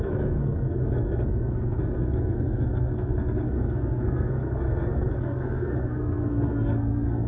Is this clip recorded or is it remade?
remade